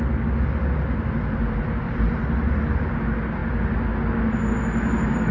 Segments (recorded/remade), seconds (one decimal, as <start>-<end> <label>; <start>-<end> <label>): 0.0-5.3 recorded